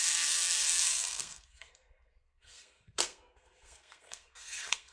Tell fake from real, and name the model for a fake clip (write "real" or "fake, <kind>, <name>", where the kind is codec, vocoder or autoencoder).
fake, codec, SNAC